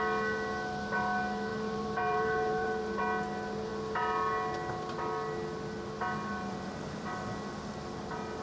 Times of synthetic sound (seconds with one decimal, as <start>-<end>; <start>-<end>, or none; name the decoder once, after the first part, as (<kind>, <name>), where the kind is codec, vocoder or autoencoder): 1.5-3.0 (vocoder, BigVGAN v2)